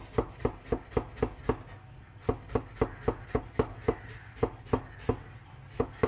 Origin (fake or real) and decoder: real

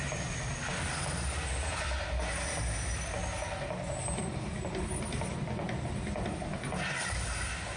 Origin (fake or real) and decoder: real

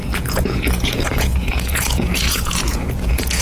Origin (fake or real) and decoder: fake, vocoder, Vocos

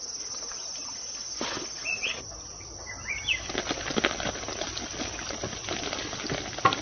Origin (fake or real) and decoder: real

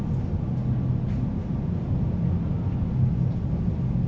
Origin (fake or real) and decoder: real